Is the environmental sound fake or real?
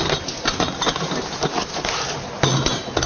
real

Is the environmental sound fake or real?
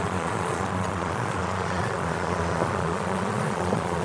fake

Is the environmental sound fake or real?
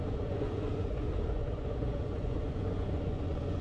fake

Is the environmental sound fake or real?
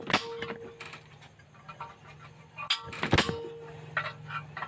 real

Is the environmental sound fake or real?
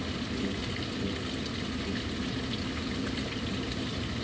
real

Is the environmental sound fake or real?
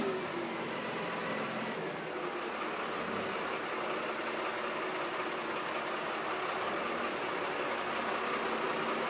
real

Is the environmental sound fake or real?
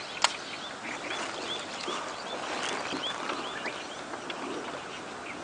real